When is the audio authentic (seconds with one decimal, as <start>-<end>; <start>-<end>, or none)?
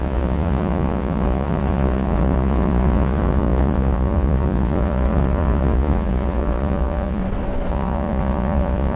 7.2-7.7